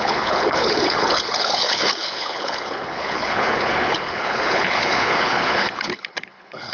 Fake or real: fake